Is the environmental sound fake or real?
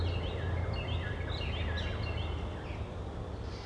real